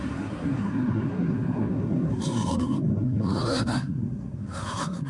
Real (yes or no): no